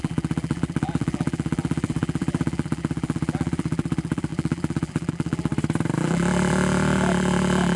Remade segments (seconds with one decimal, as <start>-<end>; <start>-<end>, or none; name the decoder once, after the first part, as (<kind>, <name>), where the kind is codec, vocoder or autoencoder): 0.0-5.5 (vocoder, BigVGAN v2); 6.0-7.8